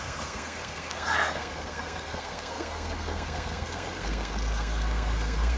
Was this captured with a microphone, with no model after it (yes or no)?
no